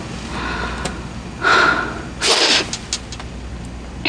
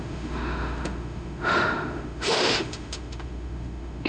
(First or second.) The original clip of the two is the first